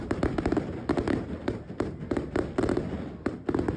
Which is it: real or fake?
real